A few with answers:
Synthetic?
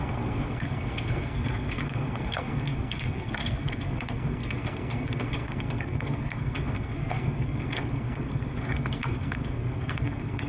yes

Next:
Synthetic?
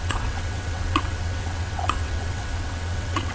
yes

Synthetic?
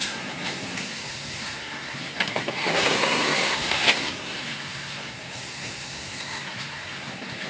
yes